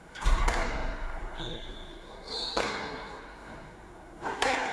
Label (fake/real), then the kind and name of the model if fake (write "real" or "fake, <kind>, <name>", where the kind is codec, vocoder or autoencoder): fake, codec, SNAC